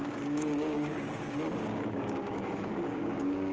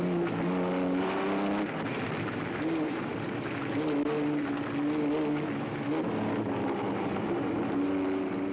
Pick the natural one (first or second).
second